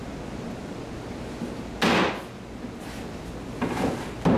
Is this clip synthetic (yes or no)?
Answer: no